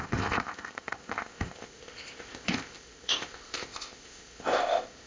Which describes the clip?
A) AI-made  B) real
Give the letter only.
A